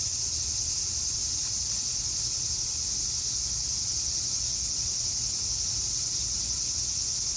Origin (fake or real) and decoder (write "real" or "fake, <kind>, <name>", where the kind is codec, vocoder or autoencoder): real